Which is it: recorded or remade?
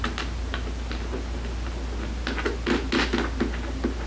recorded